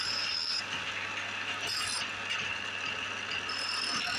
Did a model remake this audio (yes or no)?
no